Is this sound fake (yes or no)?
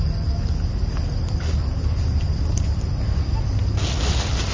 no